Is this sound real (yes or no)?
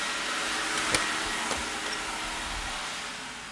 yes